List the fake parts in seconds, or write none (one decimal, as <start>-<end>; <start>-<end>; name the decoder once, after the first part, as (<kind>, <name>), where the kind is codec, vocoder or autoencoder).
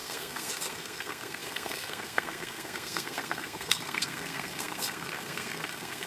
0.0-6.1 (codec, SNAC)